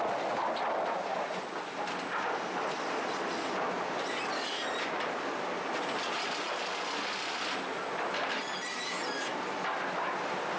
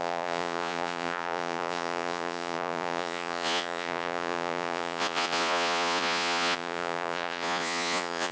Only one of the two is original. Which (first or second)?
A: first